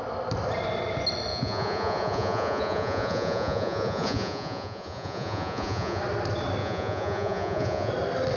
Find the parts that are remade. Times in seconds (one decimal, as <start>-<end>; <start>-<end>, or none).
1.3-6.0; 6.6-7.9

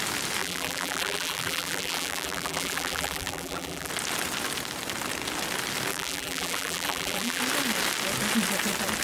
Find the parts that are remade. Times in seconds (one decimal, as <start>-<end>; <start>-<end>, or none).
0.4-3.9; 5.9-7.4

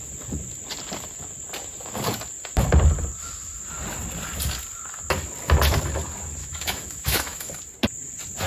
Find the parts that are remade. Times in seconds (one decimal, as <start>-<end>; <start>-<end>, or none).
6.4-7.5

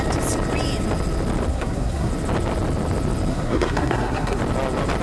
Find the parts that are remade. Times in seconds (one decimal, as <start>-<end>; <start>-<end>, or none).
1.5-2.1; 3.3-4.4

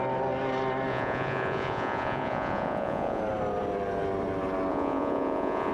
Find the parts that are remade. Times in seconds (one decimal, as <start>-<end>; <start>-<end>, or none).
0.9-3.2; 4.7-5.7